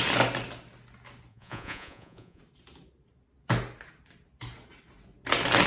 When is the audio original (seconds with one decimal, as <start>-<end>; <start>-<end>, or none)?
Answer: 0.0-1.3; 2.4-5.7